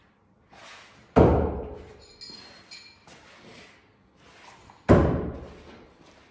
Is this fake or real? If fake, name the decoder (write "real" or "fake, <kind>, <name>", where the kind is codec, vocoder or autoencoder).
real